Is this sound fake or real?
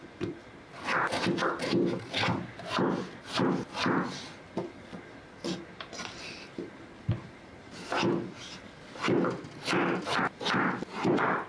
real